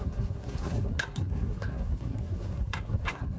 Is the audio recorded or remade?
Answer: remade